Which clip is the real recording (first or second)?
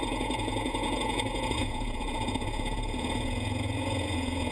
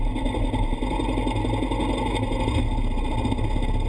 second